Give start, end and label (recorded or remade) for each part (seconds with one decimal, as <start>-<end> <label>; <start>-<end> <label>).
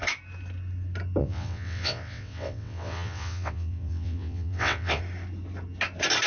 0.0-1.2 recorded; 1.2-5.0 remade; 5.0-6.3 recorded